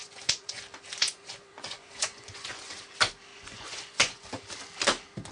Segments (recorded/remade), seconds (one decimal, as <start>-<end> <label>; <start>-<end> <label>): 0.0-0.6 remade; 0.6-1.0 recorded; 1.0-2.7 remade; 2.7-3.3 recorded; 3.3-4.3 remade; 4.3-5.3 recorded